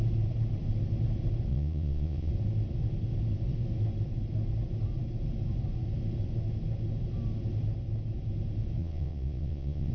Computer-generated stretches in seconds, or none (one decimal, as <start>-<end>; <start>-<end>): 1.5-2.3; 8.8-9.9